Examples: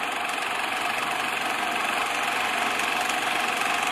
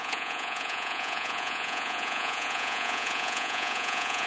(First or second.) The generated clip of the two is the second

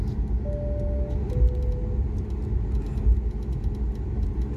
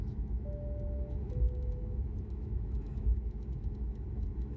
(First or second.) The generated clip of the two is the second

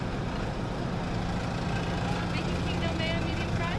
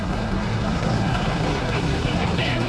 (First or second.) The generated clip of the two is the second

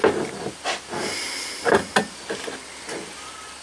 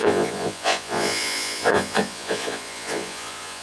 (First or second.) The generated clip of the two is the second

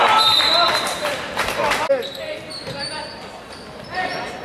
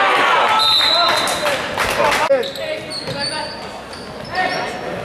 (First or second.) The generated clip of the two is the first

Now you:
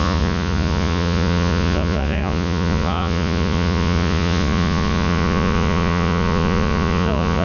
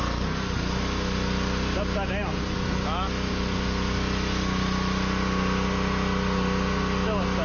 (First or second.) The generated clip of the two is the first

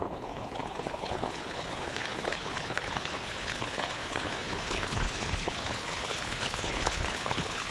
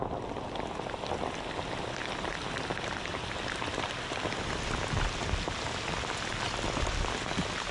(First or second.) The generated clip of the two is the first